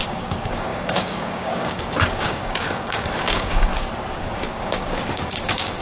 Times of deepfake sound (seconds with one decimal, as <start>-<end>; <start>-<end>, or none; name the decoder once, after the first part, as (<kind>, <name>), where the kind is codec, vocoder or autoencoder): 0.0-3.7 (codec, DAC); 4.2-5.8